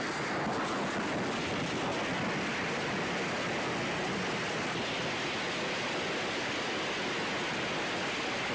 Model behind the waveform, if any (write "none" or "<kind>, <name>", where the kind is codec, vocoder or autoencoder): none